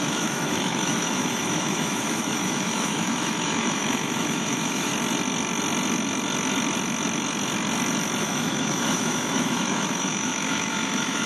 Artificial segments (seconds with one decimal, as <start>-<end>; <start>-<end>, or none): 0.0-4.9; 8.2-11.3